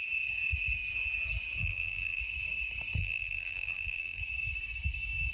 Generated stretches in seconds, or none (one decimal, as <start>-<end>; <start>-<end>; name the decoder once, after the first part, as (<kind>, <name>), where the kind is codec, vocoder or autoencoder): 1.6-2.2 (vocoder, BigVGAN v2); 3.0-4.2